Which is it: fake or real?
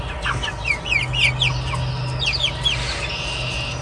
real